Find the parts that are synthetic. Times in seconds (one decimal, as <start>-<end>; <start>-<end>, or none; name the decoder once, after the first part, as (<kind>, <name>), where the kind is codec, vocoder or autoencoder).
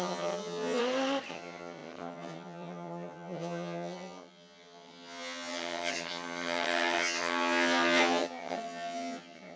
0.0-0.8 (vocoder, HiFi-GAN); 1.3-9.6